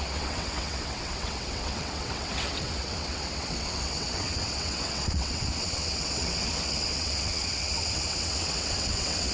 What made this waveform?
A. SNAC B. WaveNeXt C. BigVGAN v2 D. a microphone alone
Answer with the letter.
B